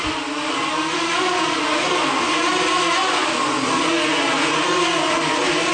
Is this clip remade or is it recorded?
recorded